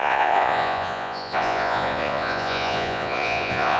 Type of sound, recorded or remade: remade